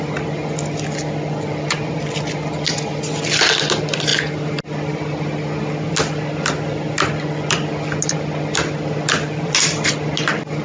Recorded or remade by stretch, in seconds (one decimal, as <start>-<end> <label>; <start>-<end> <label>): 0.0-10.6 recorded

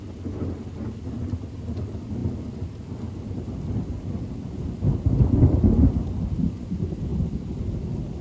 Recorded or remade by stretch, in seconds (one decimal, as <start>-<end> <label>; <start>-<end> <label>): 0.0-8.2 recorded

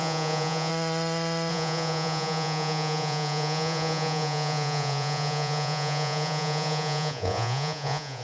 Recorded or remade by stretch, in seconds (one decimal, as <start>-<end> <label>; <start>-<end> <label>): 0.0-0.7 remade; 0.7-1.5 recorded; 1.5-8.2 remade

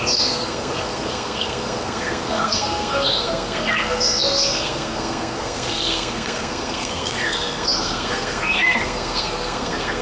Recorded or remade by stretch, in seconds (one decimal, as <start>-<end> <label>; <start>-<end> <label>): 0.0-10.0 remade

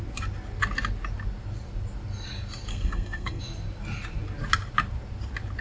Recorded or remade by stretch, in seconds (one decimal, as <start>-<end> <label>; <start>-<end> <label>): 0.0-2.7 recorded; 2.7-3.4 remade; 3.4-5.6 recorded